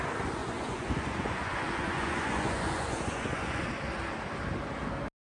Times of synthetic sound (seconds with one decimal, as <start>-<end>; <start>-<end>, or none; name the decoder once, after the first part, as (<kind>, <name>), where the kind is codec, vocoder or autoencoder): 0.4-3.6 (vocoder, Vocos)